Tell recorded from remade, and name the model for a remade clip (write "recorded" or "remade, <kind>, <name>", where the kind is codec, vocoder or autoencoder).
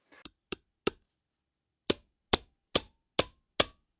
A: recorded